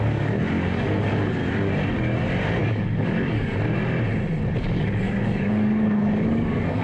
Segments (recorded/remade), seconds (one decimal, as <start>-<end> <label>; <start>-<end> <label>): 0.0-1.4 remade; 1.4-2.6 recorded; 2.6-3.5 remade; 3.5-4.6 recorded; 4.6-6.8 remade